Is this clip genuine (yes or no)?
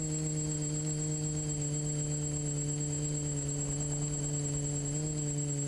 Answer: yes